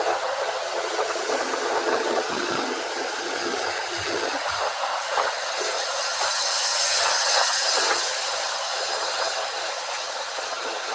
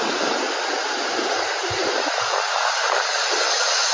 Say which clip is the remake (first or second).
first